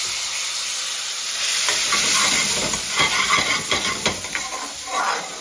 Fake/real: real